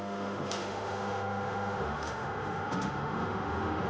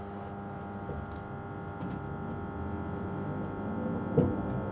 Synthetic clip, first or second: first